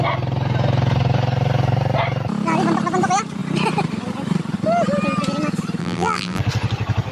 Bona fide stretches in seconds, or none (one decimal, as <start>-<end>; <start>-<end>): 0.0-5.8; 6.4-7.1